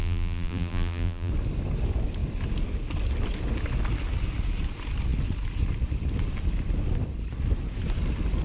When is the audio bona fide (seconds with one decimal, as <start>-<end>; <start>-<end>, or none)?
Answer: 1.3-8.4